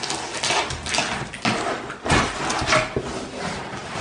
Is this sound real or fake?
real